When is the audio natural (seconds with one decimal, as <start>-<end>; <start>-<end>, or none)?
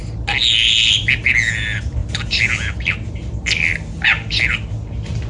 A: 0.0-5.3